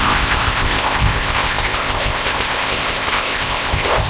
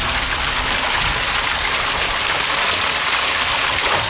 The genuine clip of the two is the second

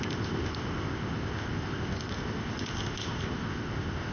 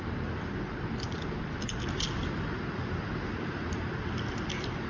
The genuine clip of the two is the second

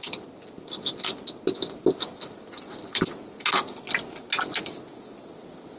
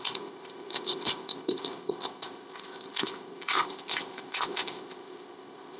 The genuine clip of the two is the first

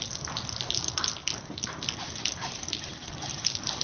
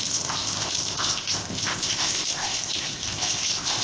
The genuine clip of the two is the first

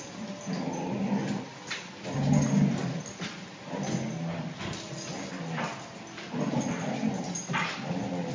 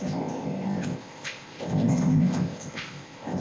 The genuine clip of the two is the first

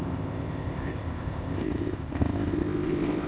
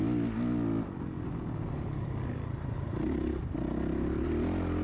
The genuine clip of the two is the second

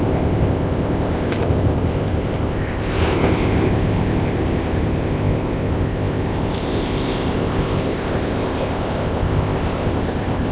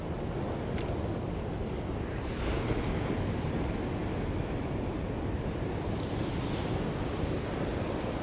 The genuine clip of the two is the second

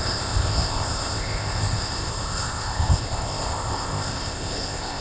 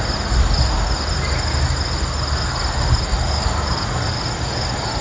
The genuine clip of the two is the second